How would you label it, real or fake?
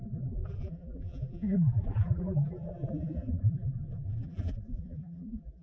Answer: fake